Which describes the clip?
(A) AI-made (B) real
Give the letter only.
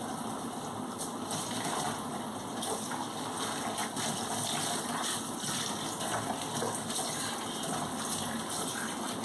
B